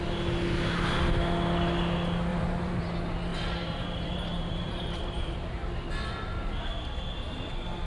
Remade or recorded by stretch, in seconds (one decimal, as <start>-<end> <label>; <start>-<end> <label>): 0.0-2.3 recorded; 2.3-2.8 remade; 2.8-3.3 recorded; 3.3-5.9 remade; 5.9-7.9 recorded